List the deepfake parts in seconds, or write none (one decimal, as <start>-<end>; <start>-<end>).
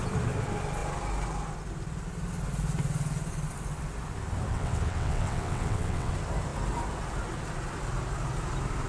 4.5-6.1